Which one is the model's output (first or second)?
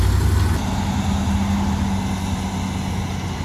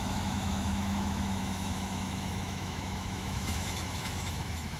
second